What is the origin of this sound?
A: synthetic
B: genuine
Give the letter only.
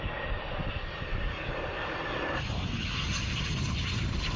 B